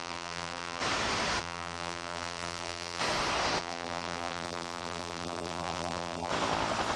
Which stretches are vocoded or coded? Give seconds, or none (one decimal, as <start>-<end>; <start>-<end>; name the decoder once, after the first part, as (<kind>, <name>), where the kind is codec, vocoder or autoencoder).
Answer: 0.0-0.8 (vocoder, BigVGAN v2); 1.4-3.0; 3.6-6.3